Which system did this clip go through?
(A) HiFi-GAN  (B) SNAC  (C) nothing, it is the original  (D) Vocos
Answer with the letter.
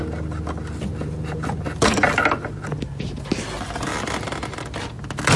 C